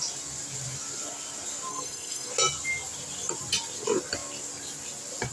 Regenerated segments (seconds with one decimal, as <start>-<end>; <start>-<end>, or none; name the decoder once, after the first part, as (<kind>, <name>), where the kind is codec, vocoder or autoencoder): 1.7-2.3 (codec, SNAC)